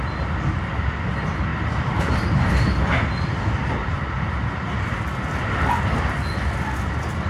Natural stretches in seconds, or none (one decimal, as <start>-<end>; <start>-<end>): 0.0-1.5; 2.5-7.3